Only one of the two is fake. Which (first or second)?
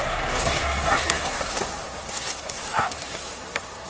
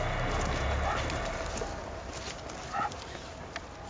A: first